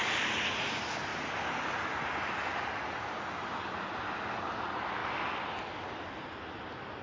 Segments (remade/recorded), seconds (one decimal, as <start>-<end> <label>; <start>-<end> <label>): 0.0-7.0 recorded